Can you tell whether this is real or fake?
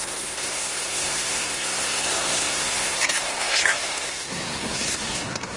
fake